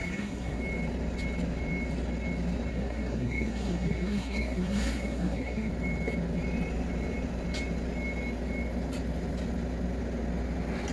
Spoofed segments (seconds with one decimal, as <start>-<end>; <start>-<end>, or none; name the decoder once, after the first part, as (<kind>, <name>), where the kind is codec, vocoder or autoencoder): 0.0-0.6 (codec, SNAC); 2.7-5.7